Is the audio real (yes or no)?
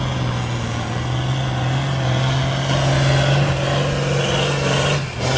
yes